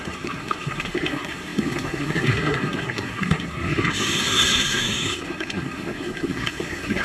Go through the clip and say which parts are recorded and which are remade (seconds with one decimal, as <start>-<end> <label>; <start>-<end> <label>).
0.0-7.0 remade